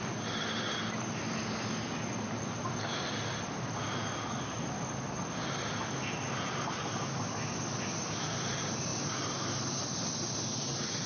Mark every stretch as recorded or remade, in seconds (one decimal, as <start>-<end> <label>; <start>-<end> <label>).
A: 0.0-11.1 recorded